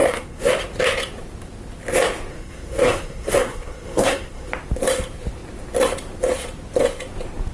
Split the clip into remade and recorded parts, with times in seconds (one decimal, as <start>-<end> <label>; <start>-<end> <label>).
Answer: 0.0-0.5 remade; 0.5-2.3 recorded; 2.3-4.5 remade; 4.5-7.5 recorded